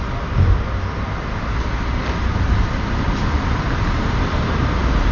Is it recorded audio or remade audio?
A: recorded